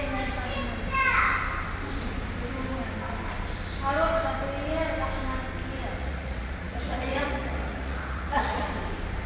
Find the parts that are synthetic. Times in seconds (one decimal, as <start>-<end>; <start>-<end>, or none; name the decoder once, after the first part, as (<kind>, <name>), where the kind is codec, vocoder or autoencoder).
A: 6.0-8.7 (vocoder, Vocos)